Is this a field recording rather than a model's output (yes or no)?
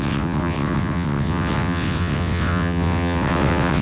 no